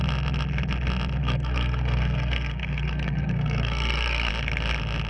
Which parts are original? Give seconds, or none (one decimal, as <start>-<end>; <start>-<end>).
0.0-1.2; 4.3-5.1